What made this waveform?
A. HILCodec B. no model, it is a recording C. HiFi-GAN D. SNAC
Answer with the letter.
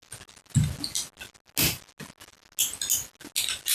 B